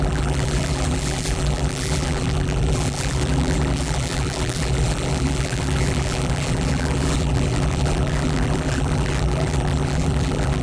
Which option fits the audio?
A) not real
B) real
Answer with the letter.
A